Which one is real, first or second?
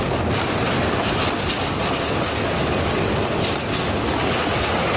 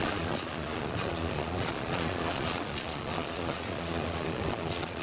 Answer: first